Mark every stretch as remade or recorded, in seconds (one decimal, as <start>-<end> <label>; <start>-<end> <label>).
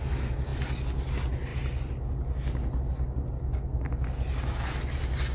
0.0-5.3 recorded